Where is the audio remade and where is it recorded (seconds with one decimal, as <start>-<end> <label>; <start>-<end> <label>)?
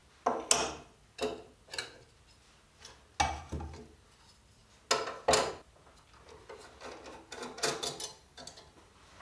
0.0-9.2 recorded